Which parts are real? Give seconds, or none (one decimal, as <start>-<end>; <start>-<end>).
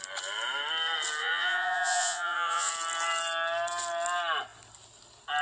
0.0-1.2; 2.7-5.4